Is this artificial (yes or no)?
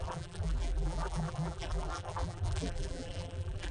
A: yes